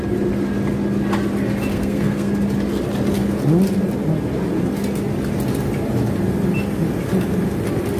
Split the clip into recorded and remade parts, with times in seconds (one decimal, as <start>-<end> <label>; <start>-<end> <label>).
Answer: 0.0-1.7 recorded; 1.7-2.3 remade; 2.3-8.0 recorded